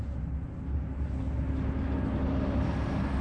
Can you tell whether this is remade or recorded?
recorded